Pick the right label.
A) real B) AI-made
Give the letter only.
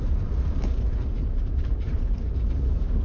B